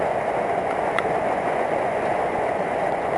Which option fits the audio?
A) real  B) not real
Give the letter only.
B